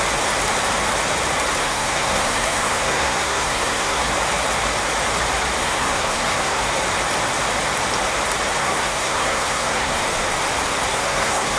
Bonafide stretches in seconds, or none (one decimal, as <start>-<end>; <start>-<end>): 0.0-1.6; 4.1-5.6; 6.7-8.6; 10.0-10.9